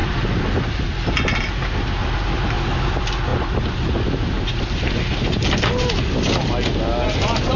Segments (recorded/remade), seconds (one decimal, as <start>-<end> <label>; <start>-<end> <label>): 0.0-7.6 recorded